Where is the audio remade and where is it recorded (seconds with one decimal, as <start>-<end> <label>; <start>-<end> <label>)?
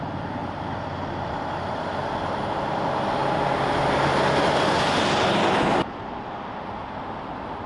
0.0-7.7 recorded